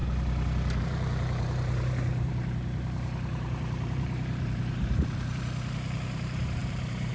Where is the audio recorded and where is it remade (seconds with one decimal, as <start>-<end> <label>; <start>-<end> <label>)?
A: 0.0-0.8 recorded; 0.8-7.1 remade